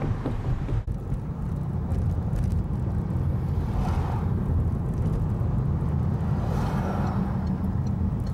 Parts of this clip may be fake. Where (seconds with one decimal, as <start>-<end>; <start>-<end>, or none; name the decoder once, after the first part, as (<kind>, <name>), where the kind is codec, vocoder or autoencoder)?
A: 1.9-3.7 (vocoder, BigVGAN v2)